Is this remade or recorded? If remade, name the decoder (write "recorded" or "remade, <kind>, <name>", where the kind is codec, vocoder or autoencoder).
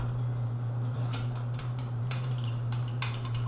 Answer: remade, vocoder, BigVGAN v2